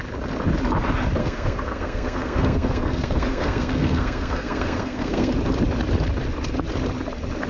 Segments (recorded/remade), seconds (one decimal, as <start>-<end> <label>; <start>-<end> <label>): 0.0-1.2 recorded; 1.2-5.3 remade; 5.3-7.5 recorded